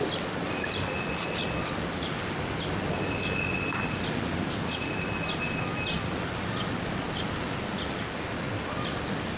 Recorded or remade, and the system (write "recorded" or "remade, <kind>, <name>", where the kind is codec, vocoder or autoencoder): recorded